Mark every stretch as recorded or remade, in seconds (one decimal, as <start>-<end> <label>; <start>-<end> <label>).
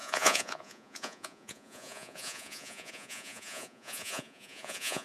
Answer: 0.0-5.0 remade